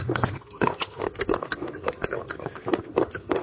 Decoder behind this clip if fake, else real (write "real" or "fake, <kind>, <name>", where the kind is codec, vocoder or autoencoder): fake, codec, SNAC